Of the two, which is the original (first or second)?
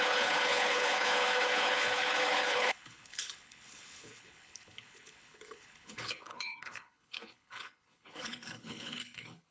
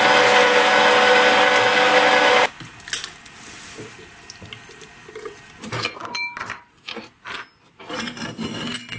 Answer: second